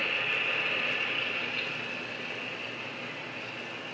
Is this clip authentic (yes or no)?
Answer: yes